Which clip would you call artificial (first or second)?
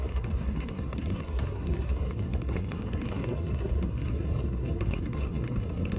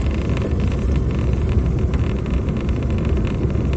first